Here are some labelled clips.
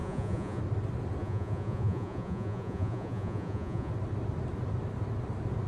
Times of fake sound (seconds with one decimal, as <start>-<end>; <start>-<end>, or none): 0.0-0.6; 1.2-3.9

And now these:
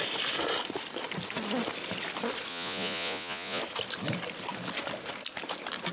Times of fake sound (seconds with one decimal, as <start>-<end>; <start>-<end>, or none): 2.5-3.6

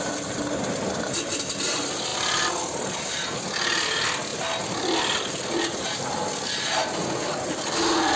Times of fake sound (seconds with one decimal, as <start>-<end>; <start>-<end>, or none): none

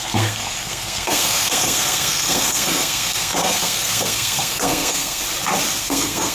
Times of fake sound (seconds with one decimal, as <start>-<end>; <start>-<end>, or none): 0.0-5.2; 5.8-6.3

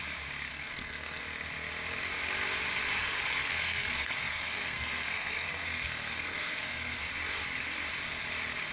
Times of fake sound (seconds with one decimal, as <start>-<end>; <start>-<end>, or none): 0.5-1.2; 3.0-7.0